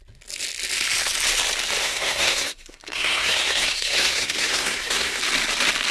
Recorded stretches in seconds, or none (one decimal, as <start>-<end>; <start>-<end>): 0.0-1.8; 5.2-5.9